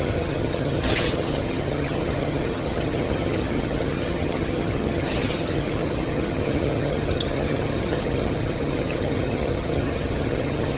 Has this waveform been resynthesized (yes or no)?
yes